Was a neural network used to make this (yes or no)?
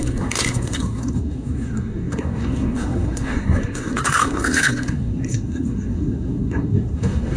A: yes